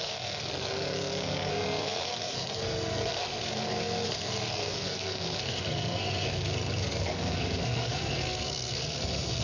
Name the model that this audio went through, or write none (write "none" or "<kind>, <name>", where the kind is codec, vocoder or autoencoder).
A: codec, SNAC